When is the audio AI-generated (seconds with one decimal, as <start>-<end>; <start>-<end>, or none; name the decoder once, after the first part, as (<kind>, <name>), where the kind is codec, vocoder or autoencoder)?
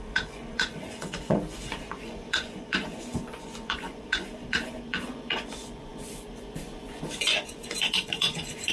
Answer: 0.0-8.7 (vocoder, Vocos)